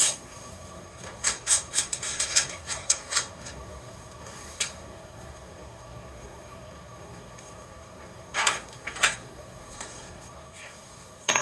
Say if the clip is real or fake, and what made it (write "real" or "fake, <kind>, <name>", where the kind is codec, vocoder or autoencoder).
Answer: fake, codec, SNAC